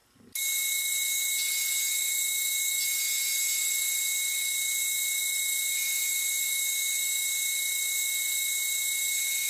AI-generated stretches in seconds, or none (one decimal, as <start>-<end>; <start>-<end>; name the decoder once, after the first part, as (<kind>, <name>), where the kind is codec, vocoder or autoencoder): none